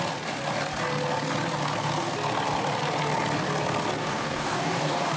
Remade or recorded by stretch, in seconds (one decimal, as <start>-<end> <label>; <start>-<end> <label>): 0.0-4.0 recorded; 4.0-5.2 remade